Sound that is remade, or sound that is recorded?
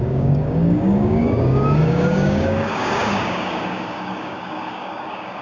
remade